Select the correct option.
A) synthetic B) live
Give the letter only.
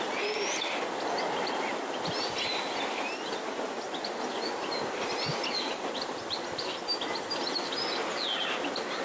B